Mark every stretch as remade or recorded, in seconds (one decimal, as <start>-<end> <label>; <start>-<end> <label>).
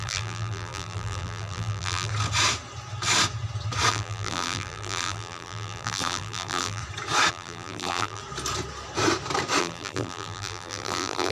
0.0-2.1 remade; 2.1-3.9 recorded; 3.9-6.8 remade; 6.8-7.3 recorded; 7.3-8.2 remade; 8.2-9.6 recorded; 9.6-11.3 remade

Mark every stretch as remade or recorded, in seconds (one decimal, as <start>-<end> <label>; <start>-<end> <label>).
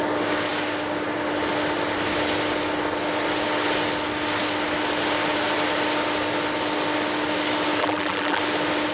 0.0-7.8 recorded; 7.8-8.4 remade; 8.4-8.9 recorded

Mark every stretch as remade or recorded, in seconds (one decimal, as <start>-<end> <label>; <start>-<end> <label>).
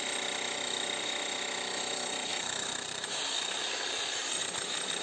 0.0-2.3 recorded; 2.3-3.2 remade; 3.2-5.0 recorded